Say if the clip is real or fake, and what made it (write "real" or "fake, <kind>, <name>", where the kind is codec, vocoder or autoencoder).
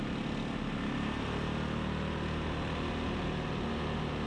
real